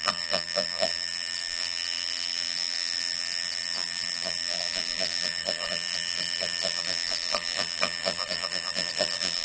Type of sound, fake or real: fake